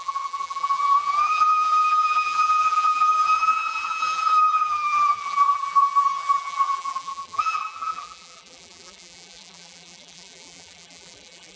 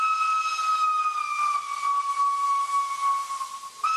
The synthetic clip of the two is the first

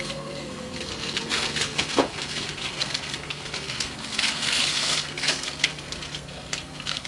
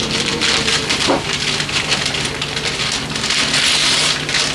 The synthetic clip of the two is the first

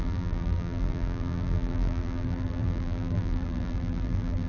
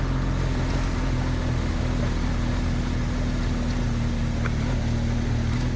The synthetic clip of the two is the first